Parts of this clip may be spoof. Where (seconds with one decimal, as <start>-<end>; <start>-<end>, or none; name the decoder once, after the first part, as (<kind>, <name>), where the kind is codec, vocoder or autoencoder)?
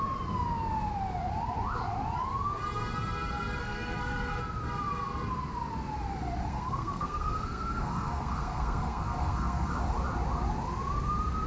3.6-4.4 (codec, SNAC); 6.5-9.7